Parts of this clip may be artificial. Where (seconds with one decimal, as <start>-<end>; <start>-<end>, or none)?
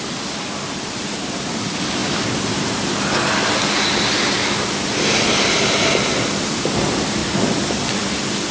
0.0-2.0; 6.4-7.2